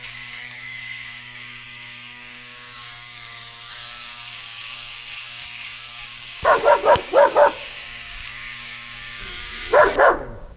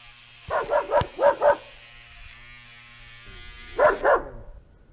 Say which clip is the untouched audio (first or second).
second